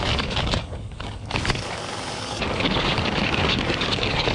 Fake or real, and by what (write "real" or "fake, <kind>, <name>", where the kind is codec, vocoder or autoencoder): fake, codec, DAC